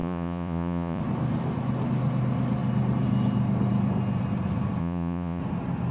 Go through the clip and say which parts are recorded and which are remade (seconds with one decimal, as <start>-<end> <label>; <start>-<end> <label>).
0.0-1.0 remade; 1.0-4.8 recorded; 4.8-5.4 remade; 5.4-5.9 recorded